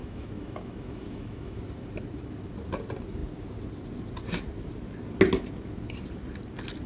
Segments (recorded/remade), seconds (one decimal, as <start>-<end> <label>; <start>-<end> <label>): 0.0-1.6 remade; 1.6-6.9 recorded